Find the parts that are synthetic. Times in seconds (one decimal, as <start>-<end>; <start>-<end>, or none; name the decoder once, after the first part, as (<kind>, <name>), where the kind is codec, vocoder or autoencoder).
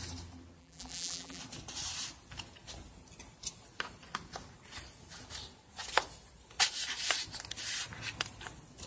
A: 0.6-1.4 (vocoder, BigVGAN v2)